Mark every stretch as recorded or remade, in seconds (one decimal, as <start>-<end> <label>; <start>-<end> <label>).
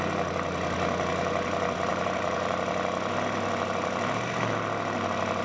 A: 0.0-1.9 recorded; 1.9-2.7 remade; 2.7-5.4 recorded